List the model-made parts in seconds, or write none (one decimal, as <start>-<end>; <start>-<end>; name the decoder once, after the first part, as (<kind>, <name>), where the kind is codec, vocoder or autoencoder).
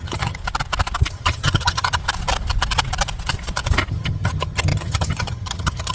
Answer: 0.0-0.4 (vocoder, HiFi-GAN); 1.1-2.0; 3.9-5.9